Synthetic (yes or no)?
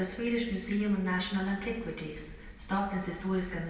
no